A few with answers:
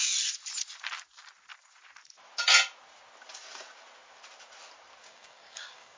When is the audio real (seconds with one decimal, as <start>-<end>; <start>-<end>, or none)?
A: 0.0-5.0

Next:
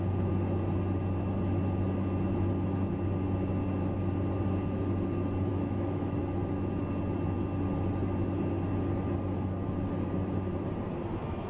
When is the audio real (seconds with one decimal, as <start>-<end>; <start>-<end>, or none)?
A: 0.0-5.5; 6.2-11.5

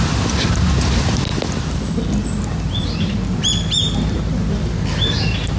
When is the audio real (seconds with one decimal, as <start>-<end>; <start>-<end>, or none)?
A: 0.0-5.6

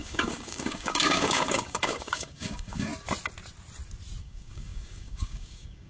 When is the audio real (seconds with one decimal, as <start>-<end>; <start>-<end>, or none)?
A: 2.9-4.2

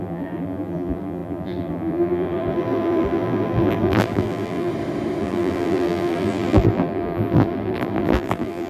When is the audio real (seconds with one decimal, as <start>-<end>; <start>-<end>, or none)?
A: 4.7-5.2

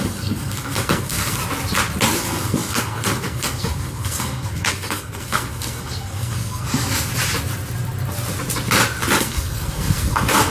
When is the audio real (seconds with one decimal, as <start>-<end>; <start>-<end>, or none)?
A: 1.4-2.1; 7.1-9.2

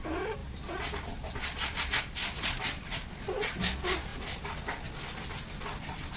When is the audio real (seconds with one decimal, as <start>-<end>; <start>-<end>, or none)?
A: 0.0-6.2